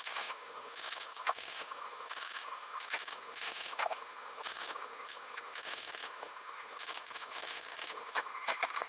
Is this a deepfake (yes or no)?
yes